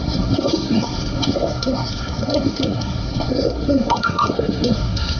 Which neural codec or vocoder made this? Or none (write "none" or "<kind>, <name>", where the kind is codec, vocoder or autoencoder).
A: codec, SNAC